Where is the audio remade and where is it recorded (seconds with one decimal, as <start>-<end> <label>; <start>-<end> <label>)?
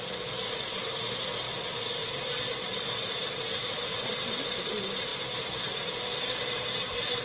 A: 0.0-2.0 recorded; 2.0-4.1 remade; 4.1-5.1 recorded; 5.1-7.2 remade